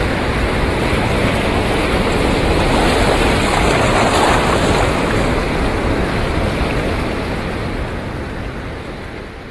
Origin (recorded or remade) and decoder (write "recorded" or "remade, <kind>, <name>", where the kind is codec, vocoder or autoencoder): recorded